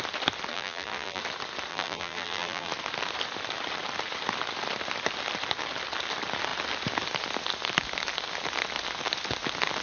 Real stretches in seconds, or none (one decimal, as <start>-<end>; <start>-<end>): 0.0-0.5; 1.2-1.7; 2.7-9.8